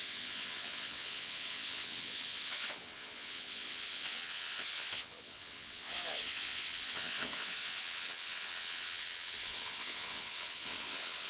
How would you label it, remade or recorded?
remade